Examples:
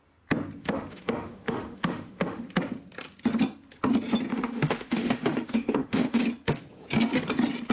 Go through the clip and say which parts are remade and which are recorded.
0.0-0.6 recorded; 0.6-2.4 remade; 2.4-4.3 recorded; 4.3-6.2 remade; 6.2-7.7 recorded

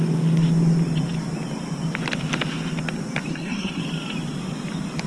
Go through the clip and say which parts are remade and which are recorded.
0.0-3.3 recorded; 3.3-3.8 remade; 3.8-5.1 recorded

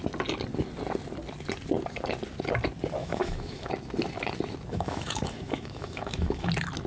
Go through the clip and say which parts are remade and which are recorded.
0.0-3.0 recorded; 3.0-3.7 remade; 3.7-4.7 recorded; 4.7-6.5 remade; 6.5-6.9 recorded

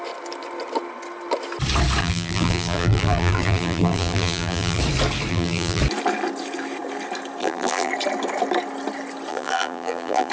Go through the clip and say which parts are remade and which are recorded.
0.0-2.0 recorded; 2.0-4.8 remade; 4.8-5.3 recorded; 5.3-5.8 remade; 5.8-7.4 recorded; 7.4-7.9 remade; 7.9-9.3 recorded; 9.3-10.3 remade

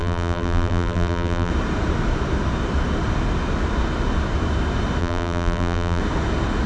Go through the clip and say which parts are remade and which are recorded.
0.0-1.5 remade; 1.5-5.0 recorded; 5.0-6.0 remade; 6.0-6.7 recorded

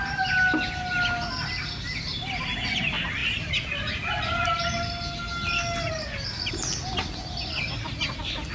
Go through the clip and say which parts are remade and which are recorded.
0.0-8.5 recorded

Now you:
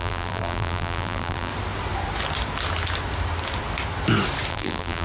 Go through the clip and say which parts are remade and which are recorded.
0.0-1.5 remade; 1.5-4.5 recorded; 4.5-5.0 remade

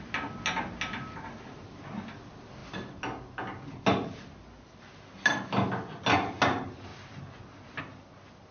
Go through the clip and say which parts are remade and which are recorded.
0.0-8.5 recorded